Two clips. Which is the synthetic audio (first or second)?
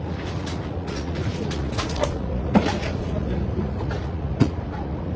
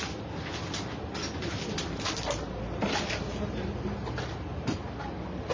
first